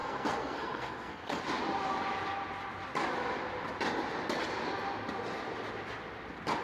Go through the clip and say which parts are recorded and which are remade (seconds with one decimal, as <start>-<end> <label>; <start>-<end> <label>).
0.0-1.4 remade; 1.4-6.6 recorded